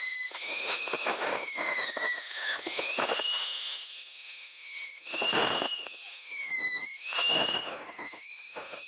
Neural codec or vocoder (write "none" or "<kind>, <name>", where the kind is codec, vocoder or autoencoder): autoencoder, DAC-VAE